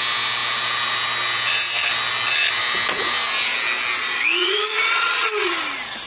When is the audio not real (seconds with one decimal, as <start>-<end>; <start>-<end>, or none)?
4.4-5.5